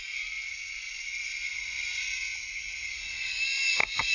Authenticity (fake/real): real